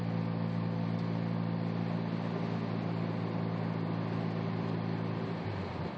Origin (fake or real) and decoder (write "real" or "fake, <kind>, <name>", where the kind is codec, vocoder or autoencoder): real